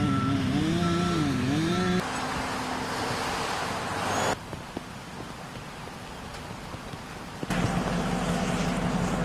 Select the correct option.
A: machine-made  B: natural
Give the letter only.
B